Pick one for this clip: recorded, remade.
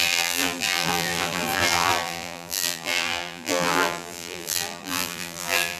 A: remade